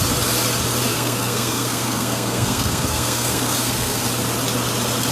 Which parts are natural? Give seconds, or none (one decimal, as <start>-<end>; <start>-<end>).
0.0-0.9; 4.0-5.1